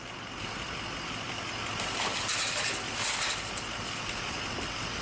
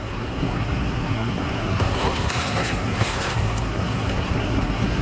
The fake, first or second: second